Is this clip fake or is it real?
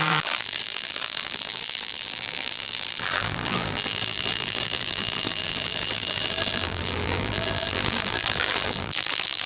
fake